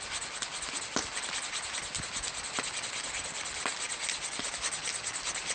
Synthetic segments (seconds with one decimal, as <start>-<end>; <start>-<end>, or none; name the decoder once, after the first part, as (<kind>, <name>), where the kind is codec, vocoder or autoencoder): none